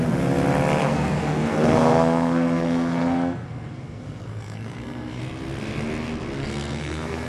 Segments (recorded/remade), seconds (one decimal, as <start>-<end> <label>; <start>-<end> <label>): 0.0-0.8 recorded; 0.8-5.2 remade; 5.2-6.4 recorded; 6.4-7.3 remade